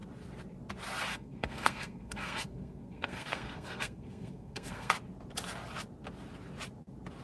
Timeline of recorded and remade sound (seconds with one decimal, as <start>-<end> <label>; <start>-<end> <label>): 0.0-1.1 recorded; 1.1-4.9 remade; 4.9-7.2 recorded